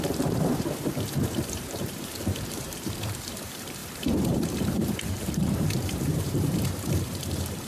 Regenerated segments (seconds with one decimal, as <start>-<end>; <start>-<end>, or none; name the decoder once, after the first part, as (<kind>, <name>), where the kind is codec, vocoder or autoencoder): 0.0-7.7 (vocoder, BigVGAN v2)